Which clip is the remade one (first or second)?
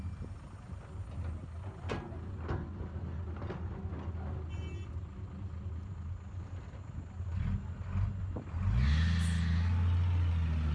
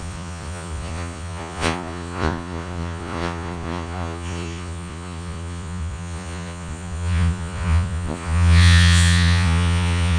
second